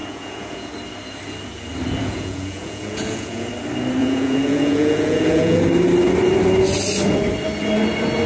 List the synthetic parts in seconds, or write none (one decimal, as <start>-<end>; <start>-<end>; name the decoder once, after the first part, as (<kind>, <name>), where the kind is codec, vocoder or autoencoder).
0.0-0.7 (vocoder, Vocos); 2.0-3.5; 4.0-5.6